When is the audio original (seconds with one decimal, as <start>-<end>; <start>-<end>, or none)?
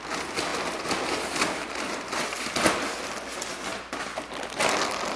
0.0-5.2